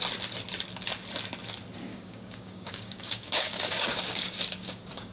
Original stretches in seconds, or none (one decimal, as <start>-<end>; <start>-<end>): 0.0-1.9